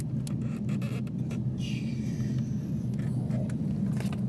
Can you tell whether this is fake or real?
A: real